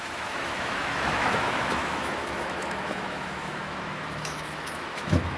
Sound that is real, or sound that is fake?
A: fake